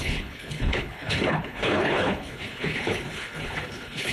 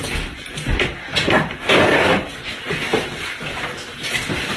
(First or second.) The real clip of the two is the second